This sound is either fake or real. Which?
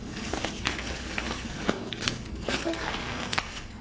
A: fake